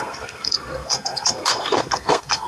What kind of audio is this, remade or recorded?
remade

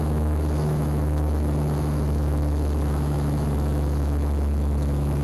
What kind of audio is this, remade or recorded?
remade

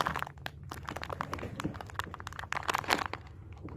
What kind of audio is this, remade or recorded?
recorded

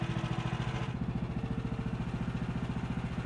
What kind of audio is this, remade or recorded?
recorded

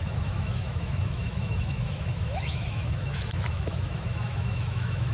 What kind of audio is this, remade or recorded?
remade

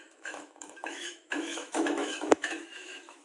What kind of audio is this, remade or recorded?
remade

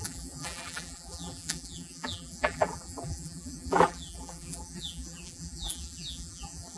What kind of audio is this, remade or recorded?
remade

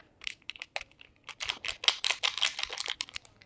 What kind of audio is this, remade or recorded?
recorded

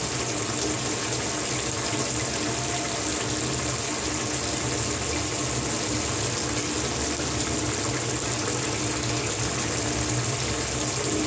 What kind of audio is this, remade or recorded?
recorded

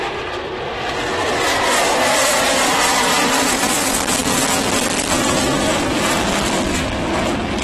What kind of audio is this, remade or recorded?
recorded